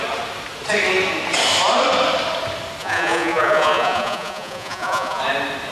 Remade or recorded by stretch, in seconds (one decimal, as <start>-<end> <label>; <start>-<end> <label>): 0.0-2.8 recorded; 2.8-5.2 remade; 5.2-5.7 recorded